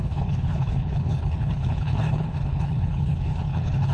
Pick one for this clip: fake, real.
fake